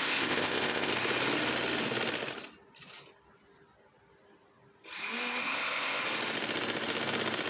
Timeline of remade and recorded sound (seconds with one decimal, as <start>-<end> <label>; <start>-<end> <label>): 0.0-0.9 remade; 0.9-5.4 recorded; 5.4-6.0 remade; 6.0-7.5 recorded